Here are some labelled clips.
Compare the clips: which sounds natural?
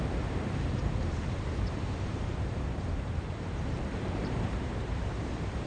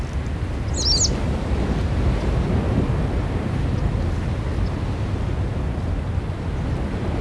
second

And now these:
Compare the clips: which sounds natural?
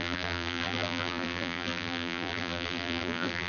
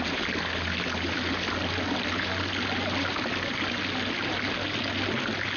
second